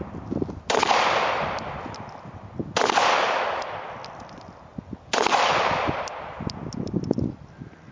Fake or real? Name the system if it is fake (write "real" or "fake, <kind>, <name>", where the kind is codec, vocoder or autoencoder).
real